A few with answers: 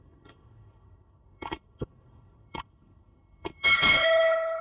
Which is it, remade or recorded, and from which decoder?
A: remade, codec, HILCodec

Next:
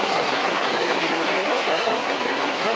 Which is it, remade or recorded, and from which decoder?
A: remade, codec, SNAC